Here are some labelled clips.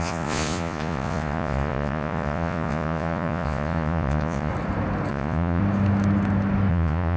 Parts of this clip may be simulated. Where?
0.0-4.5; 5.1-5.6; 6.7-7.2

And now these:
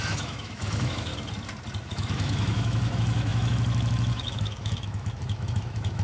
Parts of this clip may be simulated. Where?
0.0-1.1; 1.8-6.0

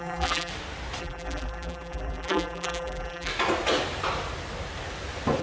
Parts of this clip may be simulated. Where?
0.0-0.5; 1.0-3.3

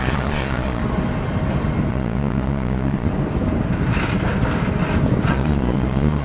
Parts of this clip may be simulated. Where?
0.0-0.8; 1.9-3.1; 5.3-6.2

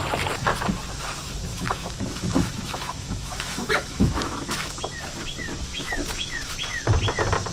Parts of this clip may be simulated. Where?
1.5-4.8; 5.7-6.5